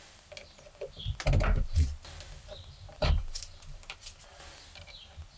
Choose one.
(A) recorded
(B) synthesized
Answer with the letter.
A